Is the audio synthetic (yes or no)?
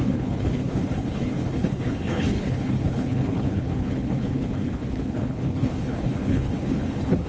yes